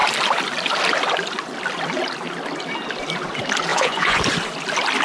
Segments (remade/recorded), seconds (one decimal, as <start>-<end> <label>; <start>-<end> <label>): 0.0-3.7 recorded; 3.7-4.2 remade; 4.2-5.0 recorded